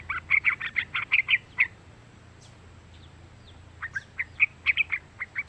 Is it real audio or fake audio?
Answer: real